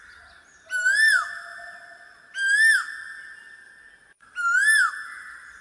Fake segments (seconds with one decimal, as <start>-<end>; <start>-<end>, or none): none